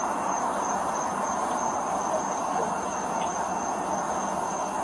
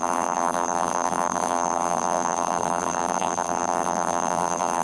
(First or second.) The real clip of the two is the first